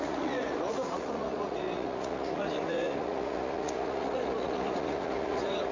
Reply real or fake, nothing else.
fake